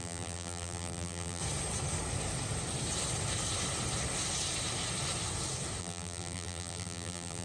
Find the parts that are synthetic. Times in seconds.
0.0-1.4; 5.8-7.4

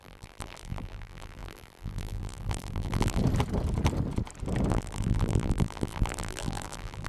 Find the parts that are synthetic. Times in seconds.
0.0-3.2; 4.7-7.1